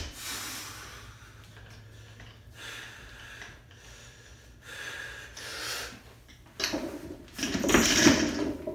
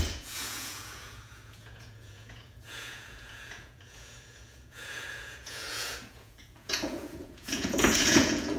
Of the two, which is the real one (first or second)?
first